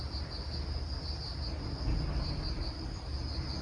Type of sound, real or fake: real